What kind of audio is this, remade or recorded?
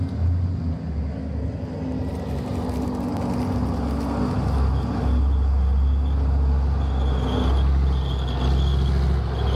recorded